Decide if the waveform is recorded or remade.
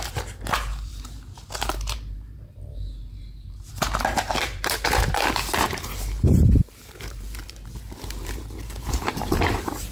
remade